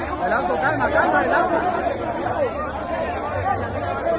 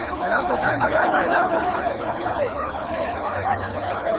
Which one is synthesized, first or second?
second